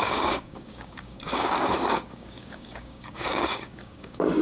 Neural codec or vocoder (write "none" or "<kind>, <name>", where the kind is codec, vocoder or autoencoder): codec, DAC